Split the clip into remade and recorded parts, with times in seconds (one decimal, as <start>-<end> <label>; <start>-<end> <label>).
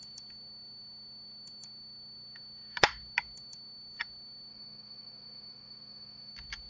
0.0-4.5 recorded; 4.5-6.3 remade; 6.3-6.7 recorded